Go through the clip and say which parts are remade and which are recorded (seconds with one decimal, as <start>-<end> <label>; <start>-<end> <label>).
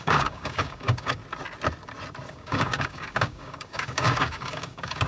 0.0-1.2 remade; 1.2-2.3 recorded; 2.3-5.1 remade